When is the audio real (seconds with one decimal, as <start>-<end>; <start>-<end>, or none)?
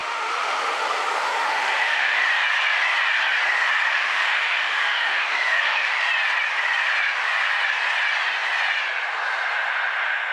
2.3-3.9; 5.9-10.3